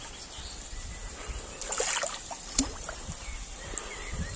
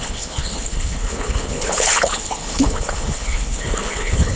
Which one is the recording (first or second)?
first